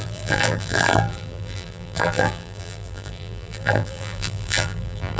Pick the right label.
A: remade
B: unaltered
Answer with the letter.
A